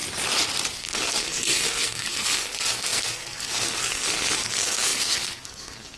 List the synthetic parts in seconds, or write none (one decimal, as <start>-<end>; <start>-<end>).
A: 0.7-6.0